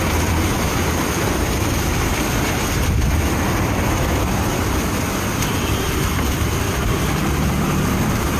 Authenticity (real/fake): fake